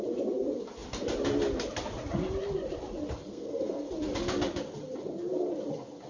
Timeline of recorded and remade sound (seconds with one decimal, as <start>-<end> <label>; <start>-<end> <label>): 0.0-3.3 recorded; 3.3-3.9 remade; 3.9-6.1 recorded